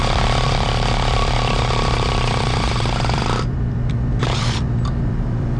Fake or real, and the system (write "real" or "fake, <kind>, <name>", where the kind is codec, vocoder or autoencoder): fake, vocoder, BigVGAN v2